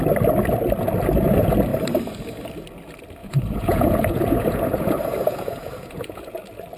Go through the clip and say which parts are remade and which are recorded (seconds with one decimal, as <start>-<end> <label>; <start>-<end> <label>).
0.0-3.2 recorded; 3.2-6.3 remade; 6.3-6.8 recorded